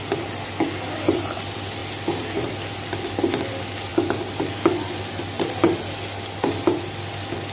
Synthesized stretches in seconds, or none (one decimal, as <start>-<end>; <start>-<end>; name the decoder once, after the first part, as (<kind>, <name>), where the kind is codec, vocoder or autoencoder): none